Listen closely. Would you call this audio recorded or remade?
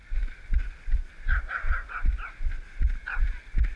recorded